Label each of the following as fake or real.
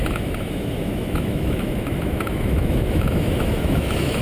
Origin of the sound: fake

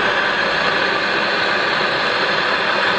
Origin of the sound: real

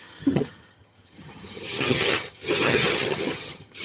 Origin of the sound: fake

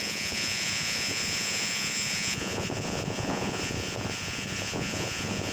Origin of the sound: fake